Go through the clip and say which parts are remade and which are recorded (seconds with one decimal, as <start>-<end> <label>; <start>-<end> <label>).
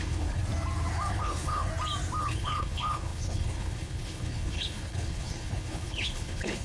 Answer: 0.0-0.4 remade; 0.4-1.1 recorded; 1.1-1.7 remade; 1.7-2.2 recorded; 2.2-6.6 remade